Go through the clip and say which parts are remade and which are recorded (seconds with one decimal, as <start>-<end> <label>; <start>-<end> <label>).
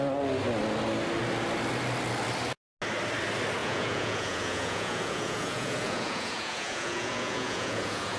0.0-3.6 recorded; 3.6-8.2 remade